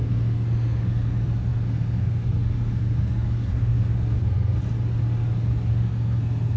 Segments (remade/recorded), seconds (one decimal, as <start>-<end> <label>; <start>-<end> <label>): 0.0-4.6 remade; 4.6-5.7 recorded; 5.7-6.6 remade